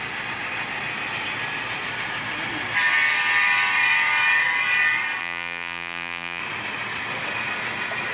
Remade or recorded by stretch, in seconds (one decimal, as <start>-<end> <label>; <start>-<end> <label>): 0.0-5.2 recorded; 5.2-6.4 remade; 6.4-8.1 recorded